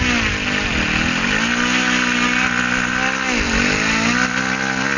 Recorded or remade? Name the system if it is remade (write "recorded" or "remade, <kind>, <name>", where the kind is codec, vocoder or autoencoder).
recorded